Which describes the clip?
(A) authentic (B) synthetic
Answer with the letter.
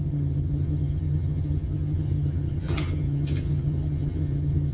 B